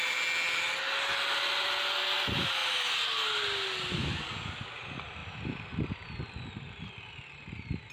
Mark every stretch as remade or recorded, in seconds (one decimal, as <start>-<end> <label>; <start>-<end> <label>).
0.0-7.9 recorded